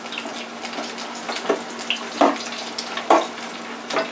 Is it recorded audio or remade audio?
recorded